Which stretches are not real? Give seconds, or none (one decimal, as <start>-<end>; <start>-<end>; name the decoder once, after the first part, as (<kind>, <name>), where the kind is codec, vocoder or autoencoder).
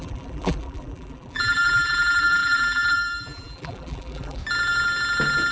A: 0.0-4.4 (vocoder, BigVGAN v2)